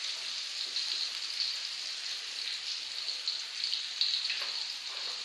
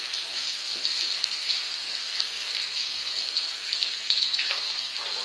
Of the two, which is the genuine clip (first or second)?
first